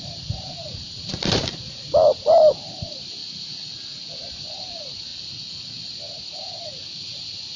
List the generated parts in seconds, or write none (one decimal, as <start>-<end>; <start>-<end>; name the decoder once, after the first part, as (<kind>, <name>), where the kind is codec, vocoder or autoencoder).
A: 0.0-3.2 (vocoder, BigVGAN v2); 4.1-5.1; 5.9-7.6